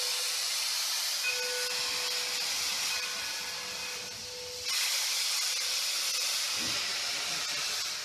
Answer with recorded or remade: recorded